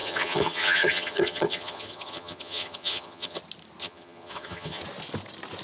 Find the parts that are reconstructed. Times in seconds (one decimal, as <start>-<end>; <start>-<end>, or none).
0.0-3.4; 3.8-4.8